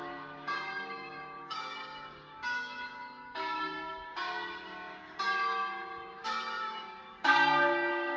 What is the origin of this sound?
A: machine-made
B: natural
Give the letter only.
A